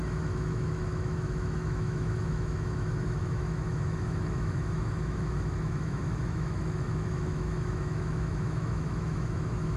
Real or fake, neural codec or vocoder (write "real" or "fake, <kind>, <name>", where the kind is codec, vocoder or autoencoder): fake, autoencoder, DAC-VAE